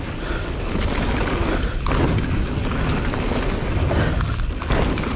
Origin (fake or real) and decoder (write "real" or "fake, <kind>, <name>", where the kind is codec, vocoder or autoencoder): real